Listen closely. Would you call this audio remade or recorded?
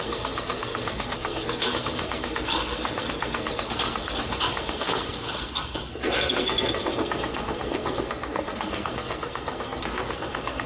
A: remade